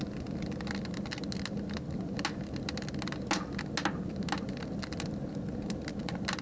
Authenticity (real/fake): real